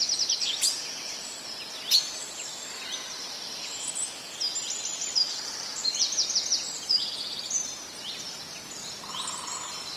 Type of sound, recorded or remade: recorded